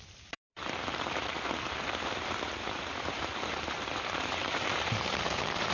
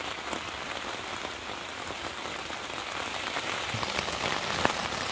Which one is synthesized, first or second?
first